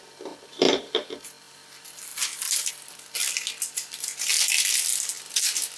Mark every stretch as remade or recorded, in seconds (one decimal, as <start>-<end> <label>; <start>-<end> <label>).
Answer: 0.0-5.8 recorded